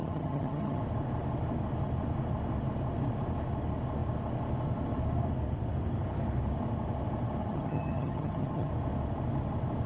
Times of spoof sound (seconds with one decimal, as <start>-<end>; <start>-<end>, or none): 0.0-0.8; 7.4-8.7